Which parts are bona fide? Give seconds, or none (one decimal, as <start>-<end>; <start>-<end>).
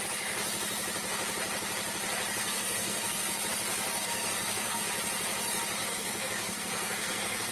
0.0-2.4; 3.4-4.0; 4.8-5.8